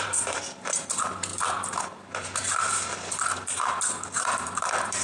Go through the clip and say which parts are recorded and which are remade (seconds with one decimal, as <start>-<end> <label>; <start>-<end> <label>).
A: 0.0-1.3 remade; 1.3-4.2 recorded; 4.2-5.0 remade